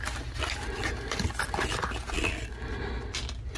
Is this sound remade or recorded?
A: recorded